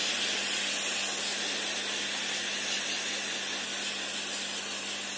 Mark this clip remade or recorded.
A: recorded